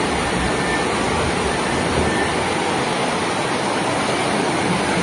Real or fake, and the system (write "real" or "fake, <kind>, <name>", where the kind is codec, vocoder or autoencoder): real